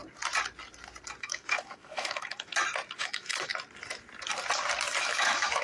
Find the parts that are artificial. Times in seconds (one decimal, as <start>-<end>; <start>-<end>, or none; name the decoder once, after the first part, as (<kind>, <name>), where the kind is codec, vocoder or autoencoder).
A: 1.2-2.5 (autoencoder, DAC-VAE); 3.0-3.5; 5.0-5.6